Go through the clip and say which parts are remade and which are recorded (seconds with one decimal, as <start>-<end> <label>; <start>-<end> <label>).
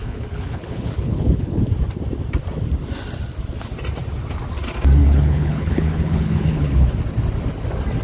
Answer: 0.0-1.6 remade; 1.6-5.0 recorded; 5.0-6.9 remade; 6.9-8.0 recorded